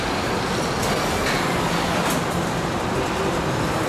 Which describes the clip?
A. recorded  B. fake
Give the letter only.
A